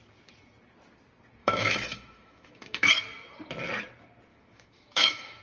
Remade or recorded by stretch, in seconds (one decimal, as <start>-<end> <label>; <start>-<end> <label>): 0.0-1.4 recorded; 1.4-2.9 remade; 2.9-4.3 recorded; 4.3-5.4 remade